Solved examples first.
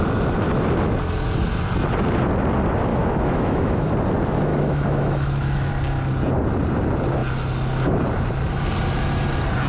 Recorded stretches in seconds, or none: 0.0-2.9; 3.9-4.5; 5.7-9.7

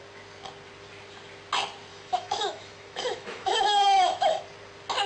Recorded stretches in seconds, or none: 0.0-1.9; 4.4-5.1

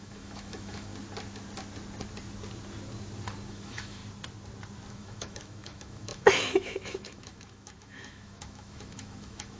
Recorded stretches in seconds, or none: 0.9-3.5; 4.0-4.9

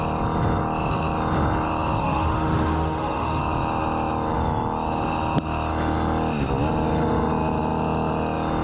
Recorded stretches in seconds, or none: 0.0-2.0; 3.4-8.6

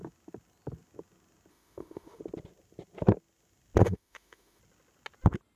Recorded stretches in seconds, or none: 0.0-1.5; 2.2-3.8; 4.6-5.6